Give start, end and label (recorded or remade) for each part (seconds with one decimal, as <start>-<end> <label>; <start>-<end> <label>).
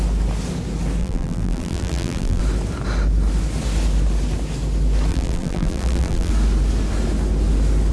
0.0-1.0 recorded; 1.0-2.4 remade; 2.4-5.1 recorded; 5.1-6.3 remade; 6.3-7.9 recorded